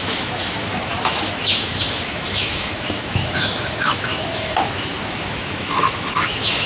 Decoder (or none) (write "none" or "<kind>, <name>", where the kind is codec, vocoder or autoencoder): autoencoder, DAC-VAE